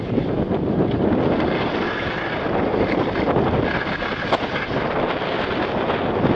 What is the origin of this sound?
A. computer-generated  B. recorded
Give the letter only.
B